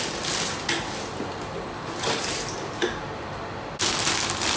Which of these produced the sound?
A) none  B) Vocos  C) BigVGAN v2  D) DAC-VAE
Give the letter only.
A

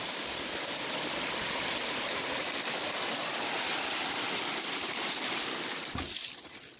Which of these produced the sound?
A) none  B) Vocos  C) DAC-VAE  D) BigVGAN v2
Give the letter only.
A